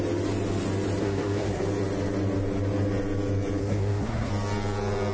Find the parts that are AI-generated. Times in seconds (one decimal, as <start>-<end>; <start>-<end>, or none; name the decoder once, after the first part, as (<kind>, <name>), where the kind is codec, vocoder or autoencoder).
1.0-1.6 (codec, SNAC); 3.6-4.3